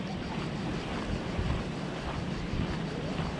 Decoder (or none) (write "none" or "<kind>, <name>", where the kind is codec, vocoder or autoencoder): vocoder, BigVGAN v2